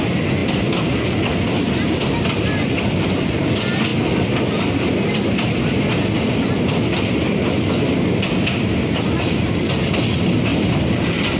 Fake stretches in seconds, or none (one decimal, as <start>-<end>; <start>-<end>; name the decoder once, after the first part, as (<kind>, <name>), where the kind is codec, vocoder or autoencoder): none